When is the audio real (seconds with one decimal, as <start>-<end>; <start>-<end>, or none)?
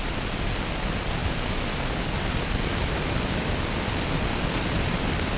0.0-5.4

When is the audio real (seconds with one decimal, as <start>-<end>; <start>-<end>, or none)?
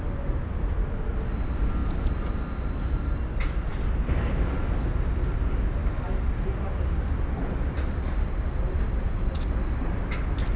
0.0-10.6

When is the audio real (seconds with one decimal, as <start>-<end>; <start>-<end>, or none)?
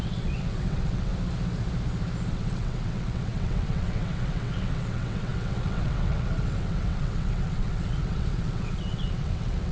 1.1-2.3